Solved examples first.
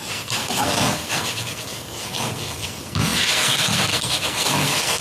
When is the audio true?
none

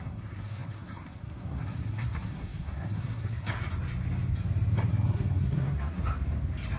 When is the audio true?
3.6-4.9; 6.0-6.8

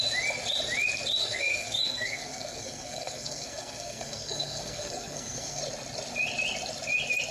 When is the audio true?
0.0-1.2; 5.6-7.3

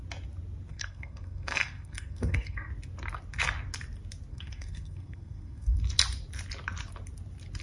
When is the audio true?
0.0-0.7; 2.7-4.3; 5.8-7.6

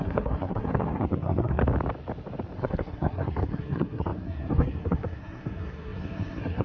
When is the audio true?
1.6-2.6